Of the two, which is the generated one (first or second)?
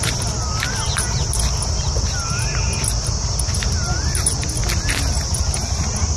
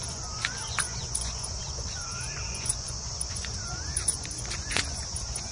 second